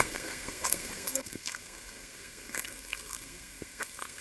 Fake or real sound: fake